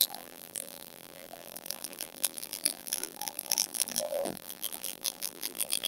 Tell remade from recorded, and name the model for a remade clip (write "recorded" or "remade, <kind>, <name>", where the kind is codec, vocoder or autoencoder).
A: remade, vocoder, BigVGAN v2